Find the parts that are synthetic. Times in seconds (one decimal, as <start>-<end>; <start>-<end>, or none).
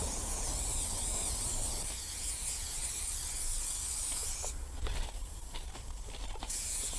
0.0-0.5; 2.0-2.8; 6.4-7.0